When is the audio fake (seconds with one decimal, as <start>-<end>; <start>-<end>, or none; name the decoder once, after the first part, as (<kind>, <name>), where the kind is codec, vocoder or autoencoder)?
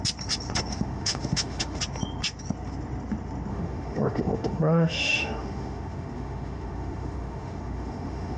0.7-1.8 (autoencoder, DAC-VAE); 3.5-8.4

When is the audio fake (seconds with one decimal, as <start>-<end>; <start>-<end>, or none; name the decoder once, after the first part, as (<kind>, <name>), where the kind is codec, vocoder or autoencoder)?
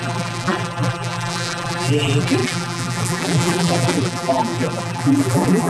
0.0-5.7 (vocoder, BigVGAN v2)